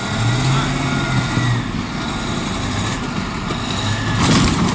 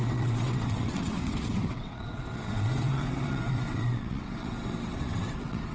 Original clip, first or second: first